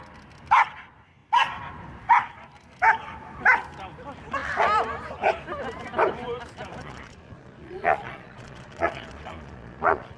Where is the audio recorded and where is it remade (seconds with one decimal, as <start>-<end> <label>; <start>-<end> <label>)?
0.0-6.8 recorded; 6.8-10.2 remade